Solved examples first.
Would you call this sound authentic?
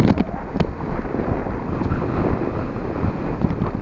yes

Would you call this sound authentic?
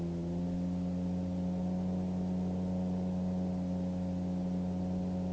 yes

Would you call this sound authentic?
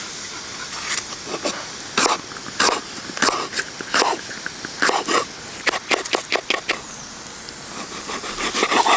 yes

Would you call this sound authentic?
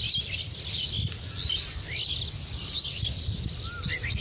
yes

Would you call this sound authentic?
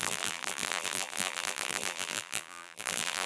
no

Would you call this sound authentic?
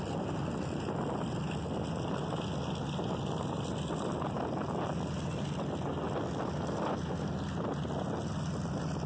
yes